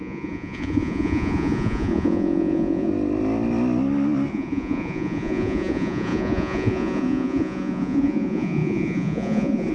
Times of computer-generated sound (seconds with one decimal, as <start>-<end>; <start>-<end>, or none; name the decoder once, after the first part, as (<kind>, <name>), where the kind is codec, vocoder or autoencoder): 0.0-2.9 (vocoder, Vocos); 4.3-9.7